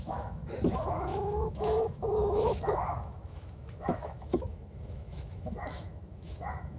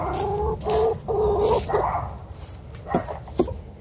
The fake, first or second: first